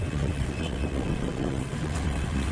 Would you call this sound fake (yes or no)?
yes